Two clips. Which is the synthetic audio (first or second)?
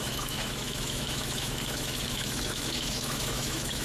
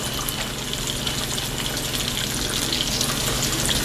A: first